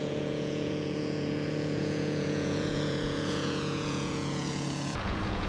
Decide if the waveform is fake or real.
fake